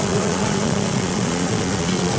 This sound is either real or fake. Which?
fake